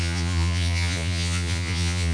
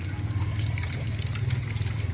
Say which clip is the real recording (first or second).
second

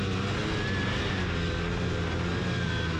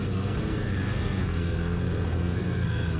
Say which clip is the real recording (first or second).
first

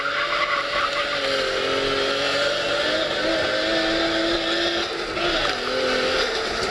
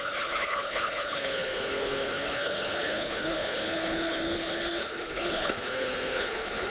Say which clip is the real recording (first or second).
first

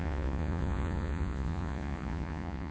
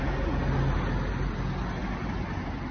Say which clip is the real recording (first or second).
second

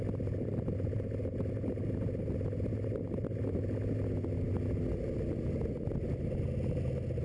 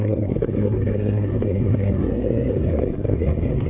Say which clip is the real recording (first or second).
first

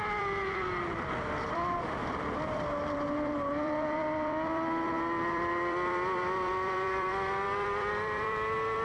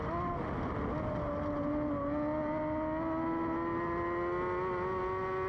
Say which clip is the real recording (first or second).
second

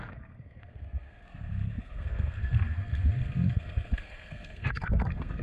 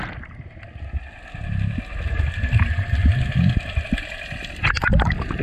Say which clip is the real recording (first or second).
second